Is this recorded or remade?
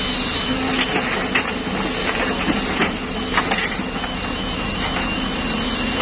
recorded